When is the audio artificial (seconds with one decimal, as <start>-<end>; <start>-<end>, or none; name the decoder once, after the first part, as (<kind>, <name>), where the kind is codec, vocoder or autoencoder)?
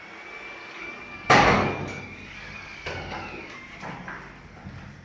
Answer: 0.6-3.6 (codec, DAC)